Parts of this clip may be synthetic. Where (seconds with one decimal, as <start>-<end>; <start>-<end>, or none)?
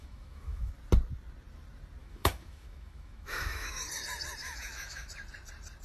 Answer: 0.0-0.7; 2.0-3.8; 4.4-5.1